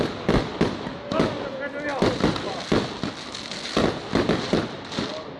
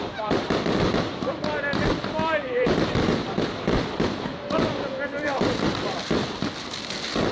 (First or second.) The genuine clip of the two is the first